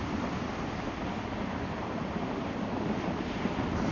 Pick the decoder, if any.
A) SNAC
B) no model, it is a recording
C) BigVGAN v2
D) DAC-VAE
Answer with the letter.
B